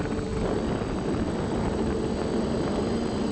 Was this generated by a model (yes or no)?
no